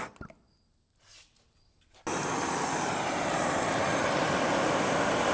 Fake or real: real